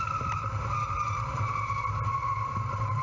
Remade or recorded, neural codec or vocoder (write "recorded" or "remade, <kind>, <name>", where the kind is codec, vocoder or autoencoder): remade, vocoder, BigVGAN v2